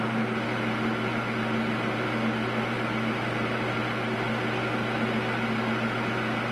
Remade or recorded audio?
recorded